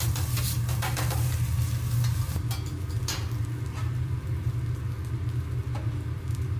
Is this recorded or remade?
recorded